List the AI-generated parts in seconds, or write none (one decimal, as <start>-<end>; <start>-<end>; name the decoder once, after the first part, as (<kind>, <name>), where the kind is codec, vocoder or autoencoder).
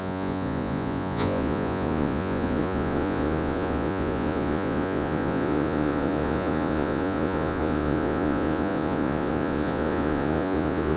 0.0-11.0 (vocoder, Vocos)